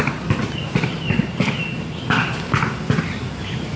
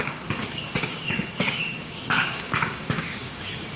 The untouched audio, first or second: first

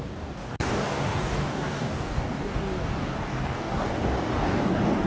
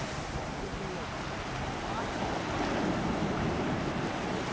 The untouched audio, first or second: second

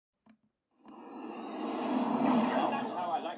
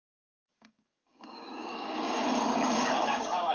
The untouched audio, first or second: first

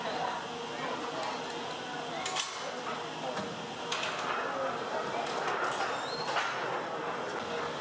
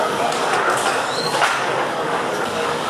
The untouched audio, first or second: first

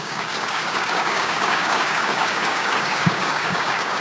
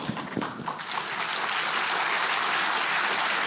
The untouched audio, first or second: second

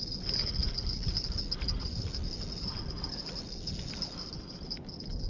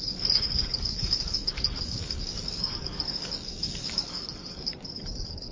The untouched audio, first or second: first